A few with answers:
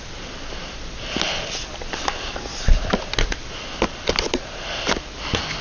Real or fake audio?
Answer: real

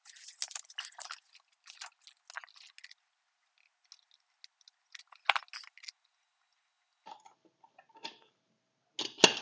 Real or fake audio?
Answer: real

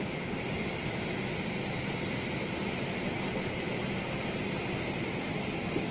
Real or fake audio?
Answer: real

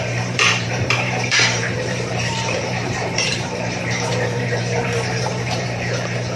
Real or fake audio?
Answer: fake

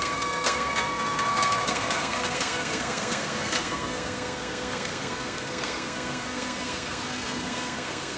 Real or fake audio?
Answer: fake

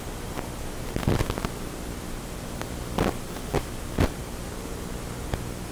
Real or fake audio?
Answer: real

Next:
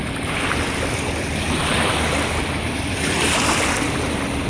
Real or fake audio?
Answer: real